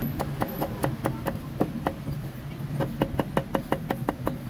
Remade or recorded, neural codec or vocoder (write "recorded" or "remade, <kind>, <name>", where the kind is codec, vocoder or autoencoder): recorded